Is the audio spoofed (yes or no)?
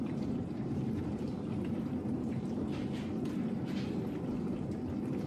no